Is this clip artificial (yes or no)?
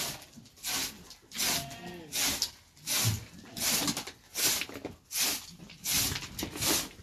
no